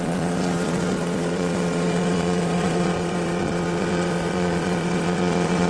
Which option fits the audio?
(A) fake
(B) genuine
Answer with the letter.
A